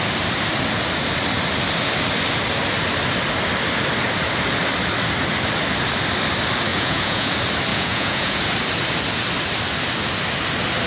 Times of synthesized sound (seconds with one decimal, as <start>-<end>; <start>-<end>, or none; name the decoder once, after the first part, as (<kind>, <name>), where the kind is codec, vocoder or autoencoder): 6.7-7.3 (vocoder, Vocos); 7.7-8.4